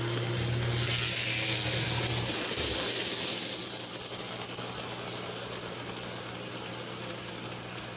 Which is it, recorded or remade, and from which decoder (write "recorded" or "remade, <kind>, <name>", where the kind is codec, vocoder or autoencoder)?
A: recorded